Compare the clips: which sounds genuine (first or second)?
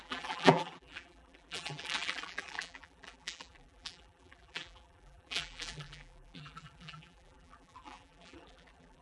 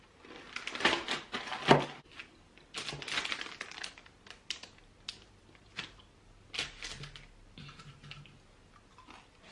second